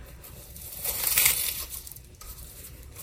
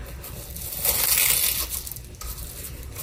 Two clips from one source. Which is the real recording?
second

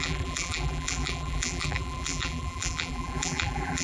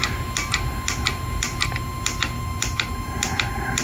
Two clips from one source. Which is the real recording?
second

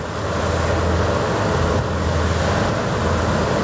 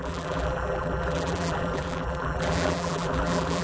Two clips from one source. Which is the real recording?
first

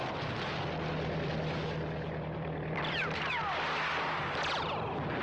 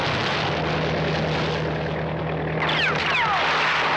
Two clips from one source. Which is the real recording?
second